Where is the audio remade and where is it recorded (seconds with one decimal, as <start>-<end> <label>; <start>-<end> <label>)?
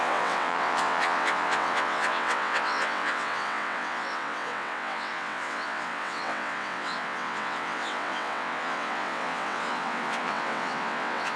0.0-11.4 remade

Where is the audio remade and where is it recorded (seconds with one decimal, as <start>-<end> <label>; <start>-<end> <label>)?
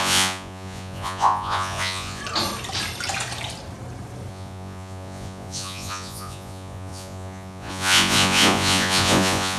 0.0-2.2 remade; 2.2-4.3 recorded; 4.3-9.6 remade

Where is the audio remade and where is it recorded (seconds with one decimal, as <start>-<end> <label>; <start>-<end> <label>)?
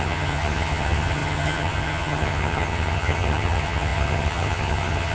0.0-5.1 remade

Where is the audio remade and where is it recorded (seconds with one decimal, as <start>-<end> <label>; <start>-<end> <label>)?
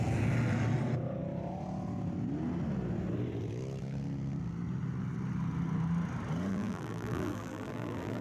0.0-6.5 recorded; 6.5-8.2 remade